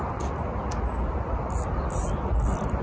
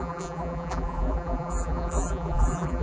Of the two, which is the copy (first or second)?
second